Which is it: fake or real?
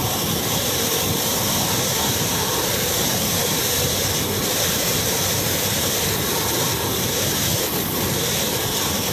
fake